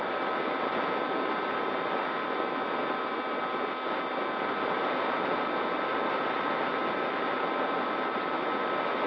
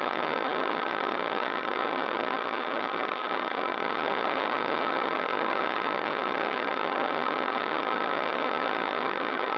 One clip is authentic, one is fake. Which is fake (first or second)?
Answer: second